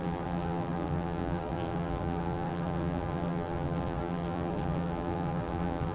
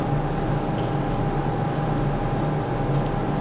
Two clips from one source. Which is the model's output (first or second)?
first